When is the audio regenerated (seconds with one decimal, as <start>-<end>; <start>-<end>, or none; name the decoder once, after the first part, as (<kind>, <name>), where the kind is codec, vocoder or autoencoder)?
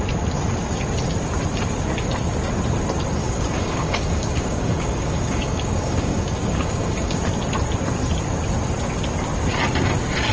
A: 3.2-7.2 (codec, DAC)